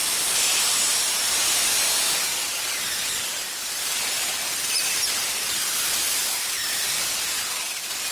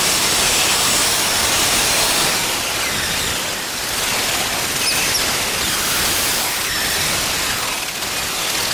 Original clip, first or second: second